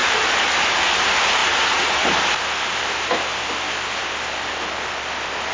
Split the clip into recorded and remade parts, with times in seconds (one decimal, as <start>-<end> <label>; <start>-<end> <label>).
0.0-5.5 recorded